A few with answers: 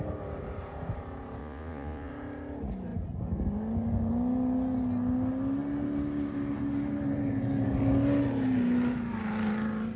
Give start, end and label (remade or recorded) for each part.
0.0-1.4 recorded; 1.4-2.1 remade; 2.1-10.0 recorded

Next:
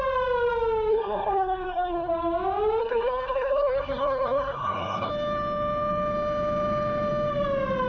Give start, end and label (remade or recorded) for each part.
0.0-0.9 recorded; 0.9-2.1 remade; 2.1-2.8 recorded; 2.8-5.1 remade; 5.1-7.9 recorded